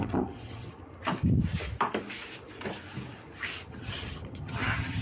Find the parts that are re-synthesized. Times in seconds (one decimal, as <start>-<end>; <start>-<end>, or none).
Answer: 0.0-0.7; 3.7-5.0